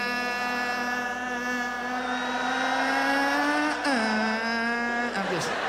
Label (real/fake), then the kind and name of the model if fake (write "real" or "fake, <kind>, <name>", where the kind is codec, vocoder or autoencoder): real